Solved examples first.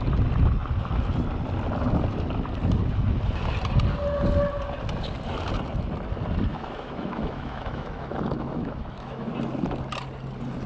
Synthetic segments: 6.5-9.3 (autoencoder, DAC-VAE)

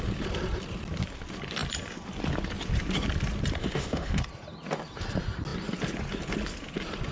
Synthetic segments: 3.6-4.2 (autoencoder, DAC-VAE)

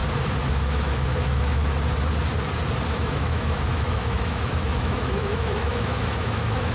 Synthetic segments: 0.5-1.6 (autoencoder, DAC-VAE); 2.9-6.7

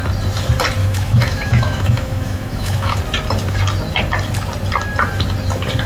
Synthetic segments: 0.8-3.0 (autoencoder, DAC-VAE)

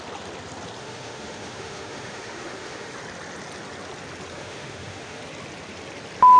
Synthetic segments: 0.8-2.9 (autoencoder, DAC-VAE); 4.3-5.2